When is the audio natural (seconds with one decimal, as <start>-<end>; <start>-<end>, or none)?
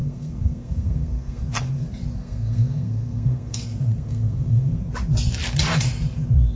1.4-2.2; 4.8-6.6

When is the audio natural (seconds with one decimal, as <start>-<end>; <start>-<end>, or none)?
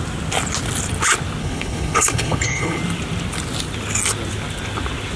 0.0-1.4; 2.8-5.2